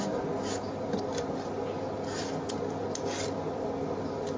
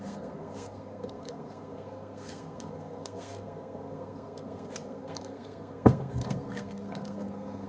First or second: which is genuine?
first